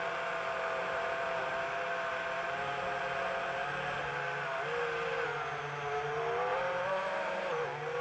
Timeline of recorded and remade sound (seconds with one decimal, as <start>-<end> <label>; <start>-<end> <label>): 0.0-0.8 recorded; 0.8-1.5 remade; 1.5-6.5 recorded; 6.5-8.0 remade